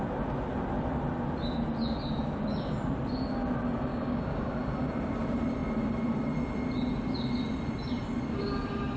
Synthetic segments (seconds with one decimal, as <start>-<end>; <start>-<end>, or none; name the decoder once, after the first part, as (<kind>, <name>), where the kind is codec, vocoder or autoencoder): 3.9-4.5 (codec, DAC)